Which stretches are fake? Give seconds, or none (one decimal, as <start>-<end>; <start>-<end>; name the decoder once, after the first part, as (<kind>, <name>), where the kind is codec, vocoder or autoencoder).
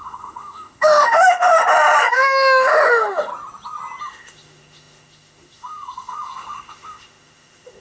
0.0-1.6 (autoencoder, DAC-VAE); 2.1-3.3; 4.0-7.8